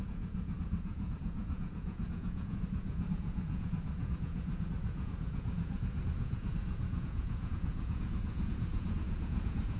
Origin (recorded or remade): remade